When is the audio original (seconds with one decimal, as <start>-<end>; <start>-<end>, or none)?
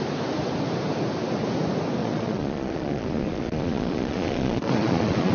0.0-2.0